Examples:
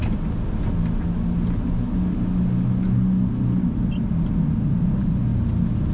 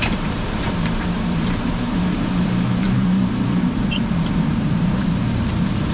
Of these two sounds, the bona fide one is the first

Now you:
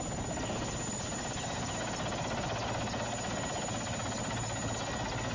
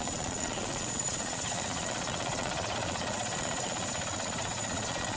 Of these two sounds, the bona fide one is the first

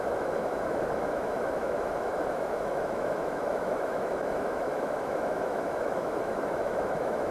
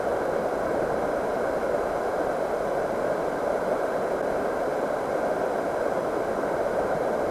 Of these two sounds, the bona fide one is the second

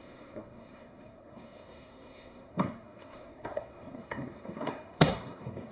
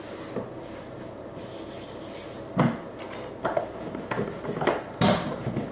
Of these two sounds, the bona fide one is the second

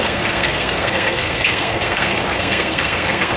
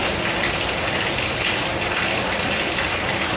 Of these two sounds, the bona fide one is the second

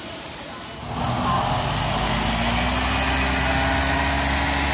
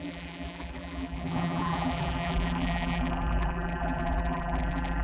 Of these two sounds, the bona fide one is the first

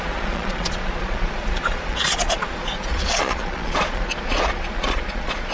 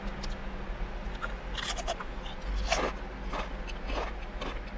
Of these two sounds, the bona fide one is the second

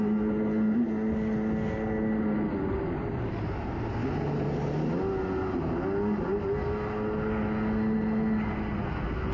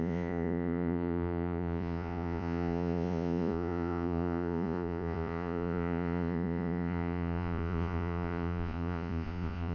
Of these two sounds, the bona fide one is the first